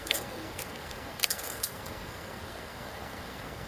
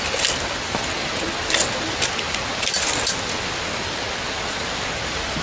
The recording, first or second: second